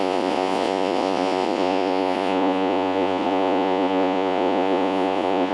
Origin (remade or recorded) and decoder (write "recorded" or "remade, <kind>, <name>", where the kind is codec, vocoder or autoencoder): remade, vocoder, Vocos